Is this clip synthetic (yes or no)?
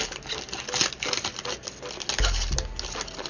no